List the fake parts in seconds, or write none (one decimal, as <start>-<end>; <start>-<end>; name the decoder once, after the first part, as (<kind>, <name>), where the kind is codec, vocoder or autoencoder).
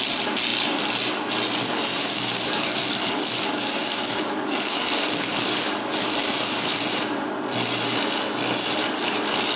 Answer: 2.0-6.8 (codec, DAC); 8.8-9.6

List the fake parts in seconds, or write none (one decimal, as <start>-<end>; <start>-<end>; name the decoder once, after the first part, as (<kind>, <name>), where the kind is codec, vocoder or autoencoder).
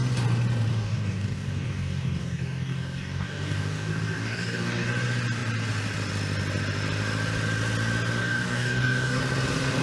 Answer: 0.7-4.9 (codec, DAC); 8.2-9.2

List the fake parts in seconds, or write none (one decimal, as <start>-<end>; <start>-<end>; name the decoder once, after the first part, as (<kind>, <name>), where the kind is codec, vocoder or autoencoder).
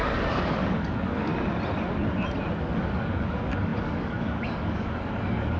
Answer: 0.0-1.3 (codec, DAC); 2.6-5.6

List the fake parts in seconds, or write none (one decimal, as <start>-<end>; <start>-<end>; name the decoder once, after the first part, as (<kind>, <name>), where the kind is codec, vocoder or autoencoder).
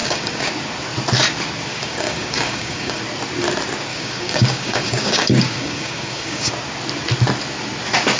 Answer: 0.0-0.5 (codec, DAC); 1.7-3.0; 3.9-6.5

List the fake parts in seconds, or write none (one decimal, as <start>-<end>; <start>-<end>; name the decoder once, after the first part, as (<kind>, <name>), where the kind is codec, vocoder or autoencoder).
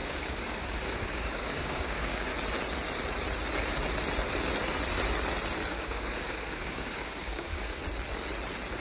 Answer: 0.0-2.3 (codec, DAC); 5.7-7.8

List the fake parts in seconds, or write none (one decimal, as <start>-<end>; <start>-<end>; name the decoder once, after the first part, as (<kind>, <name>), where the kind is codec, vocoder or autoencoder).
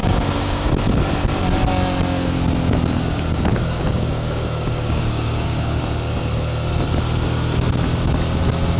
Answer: 0.0-0.7 (codec, DAC); 3.5-5.8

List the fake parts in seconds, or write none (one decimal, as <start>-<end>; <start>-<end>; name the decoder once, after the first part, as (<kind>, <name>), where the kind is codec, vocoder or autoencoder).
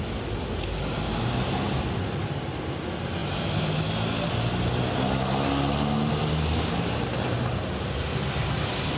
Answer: none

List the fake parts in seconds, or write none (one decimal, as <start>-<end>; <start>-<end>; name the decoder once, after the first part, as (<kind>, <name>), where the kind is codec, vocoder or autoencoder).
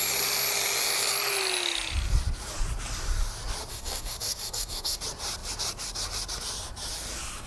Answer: 3.7-5.0 (codec, DAC)